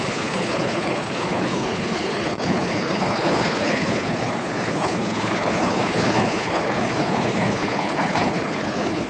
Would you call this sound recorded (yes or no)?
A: no